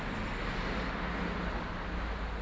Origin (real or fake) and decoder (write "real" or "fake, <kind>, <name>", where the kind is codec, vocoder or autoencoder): real